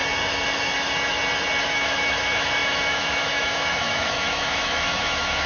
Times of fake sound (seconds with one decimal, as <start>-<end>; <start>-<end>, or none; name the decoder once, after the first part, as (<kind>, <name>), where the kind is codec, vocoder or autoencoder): 1.6-5.5 (autoencoder, DAC-VAE)